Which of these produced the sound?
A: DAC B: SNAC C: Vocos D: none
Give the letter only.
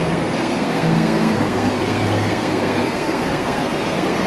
B